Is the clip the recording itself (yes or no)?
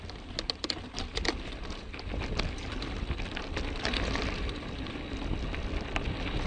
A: yes